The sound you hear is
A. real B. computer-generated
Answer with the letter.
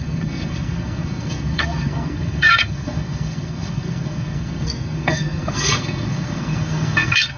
B